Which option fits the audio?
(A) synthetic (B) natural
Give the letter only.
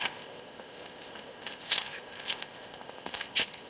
A